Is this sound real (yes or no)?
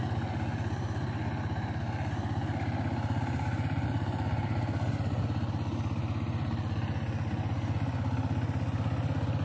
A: yes